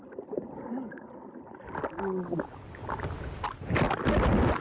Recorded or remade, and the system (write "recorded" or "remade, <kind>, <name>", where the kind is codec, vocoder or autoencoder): recorded